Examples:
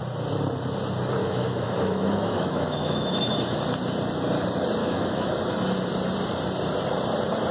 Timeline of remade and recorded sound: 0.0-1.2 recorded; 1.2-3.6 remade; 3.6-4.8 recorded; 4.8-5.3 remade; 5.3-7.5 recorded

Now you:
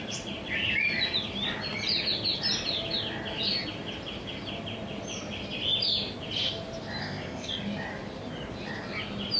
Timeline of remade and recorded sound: 0.0-7.0 recorded; 7.0-7.5 remade; 7.5-9.4 recorded